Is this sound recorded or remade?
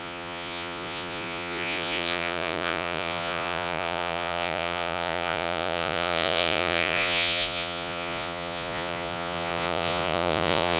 remade